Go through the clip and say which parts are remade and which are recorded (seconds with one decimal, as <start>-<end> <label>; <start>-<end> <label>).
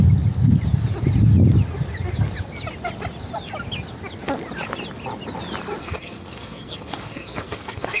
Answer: 0.0-5.8 recorded; 5.8-8.0 remade